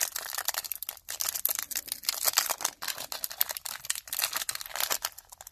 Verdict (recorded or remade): recorded